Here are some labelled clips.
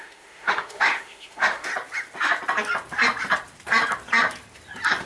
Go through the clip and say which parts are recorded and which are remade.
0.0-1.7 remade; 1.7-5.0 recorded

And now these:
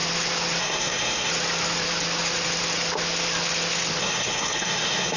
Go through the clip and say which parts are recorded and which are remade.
0.0-0.6 recorded; 0.6-1.3 remade; 1.3-4.0 recorded; 4.0-5.2 remade